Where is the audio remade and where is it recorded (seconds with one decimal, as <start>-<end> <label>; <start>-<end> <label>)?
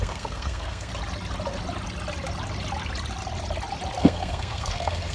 0.0-0.9 remade; 0.9-4.0 recorded; 4.0-5.1 remade